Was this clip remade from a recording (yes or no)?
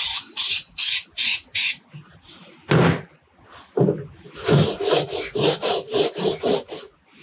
no